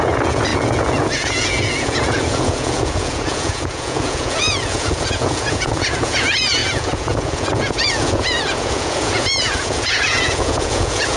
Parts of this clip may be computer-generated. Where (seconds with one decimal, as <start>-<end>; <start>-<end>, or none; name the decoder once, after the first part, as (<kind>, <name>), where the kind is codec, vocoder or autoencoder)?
0.0-11.2 (vocoder, Vocos)